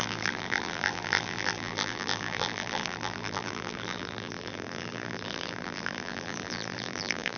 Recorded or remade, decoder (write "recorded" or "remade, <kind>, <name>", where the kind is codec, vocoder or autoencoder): remade, vocoder, BigVGAN v2